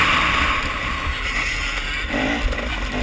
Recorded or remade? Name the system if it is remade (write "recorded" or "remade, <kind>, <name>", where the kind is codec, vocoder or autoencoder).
recorded